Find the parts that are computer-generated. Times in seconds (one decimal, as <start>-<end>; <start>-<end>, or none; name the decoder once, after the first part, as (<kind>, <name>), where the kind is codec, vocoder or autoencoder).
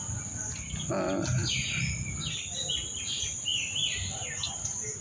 none